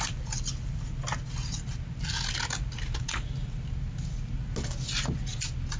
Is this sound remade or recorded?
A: recorded